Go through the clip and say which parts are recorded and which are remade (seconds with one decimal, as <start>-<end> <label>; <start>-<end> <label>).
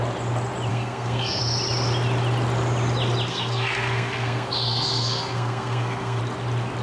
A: 0.0-0.7 recorded; 0.7-1.4 remade; 1.4-3.3 recorded; 3.3-6.2 remade; 6.2-6.8 recorded